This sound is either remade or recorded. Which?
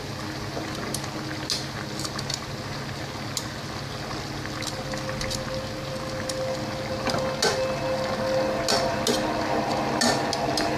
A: recorded